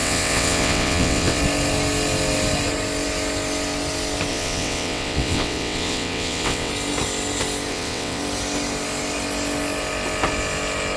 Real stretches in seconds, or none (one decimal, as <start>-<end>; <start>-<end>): 1.4-4.3; 6.7-7.7; 8.2-11.0